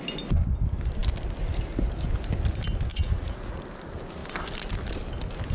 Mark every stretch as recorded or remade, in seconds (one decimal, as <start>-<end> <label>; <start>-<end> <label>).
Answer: 0.0-2.9 recorded; 2.9-3.6 remade; 3.6-5.5 recorded